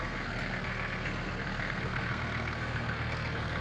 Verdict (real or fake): fake